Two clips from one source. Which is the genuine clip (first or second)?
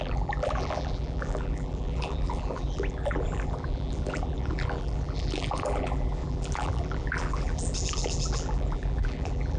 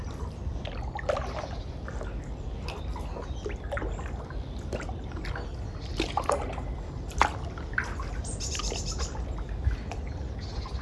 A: second